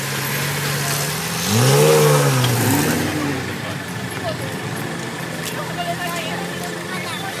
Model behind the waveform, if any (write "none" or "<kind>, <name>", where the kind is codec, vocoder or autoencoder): none